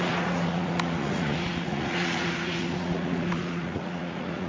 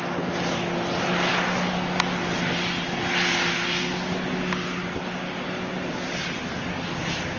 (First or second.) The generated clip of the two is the first